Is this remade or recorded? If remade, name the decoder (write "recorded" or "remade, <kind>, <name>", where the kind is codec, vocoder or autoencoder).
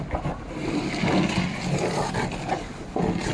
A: recorded